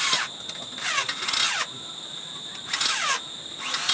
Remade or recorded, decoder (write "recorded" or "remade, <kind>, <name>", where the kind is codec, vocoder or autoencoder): recorded